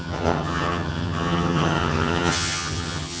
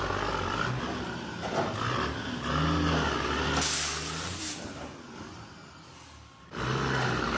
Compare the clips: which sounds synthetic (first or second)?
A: first